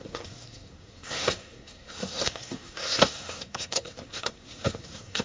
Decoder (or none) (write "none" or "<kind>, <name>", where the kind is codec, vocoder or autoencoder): codec, SNAC